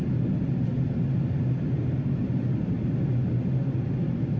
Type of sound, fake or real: real